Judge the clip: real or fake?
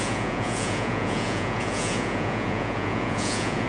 fake